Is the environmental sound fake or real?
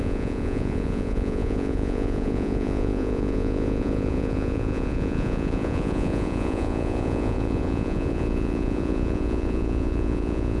fake